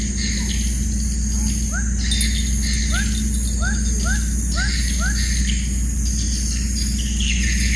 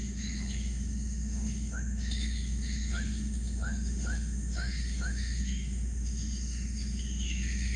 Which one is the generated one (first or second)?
second